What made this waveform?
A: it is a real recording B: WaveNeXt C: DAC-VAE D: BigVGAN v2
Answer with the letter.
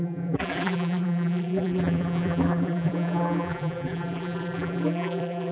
D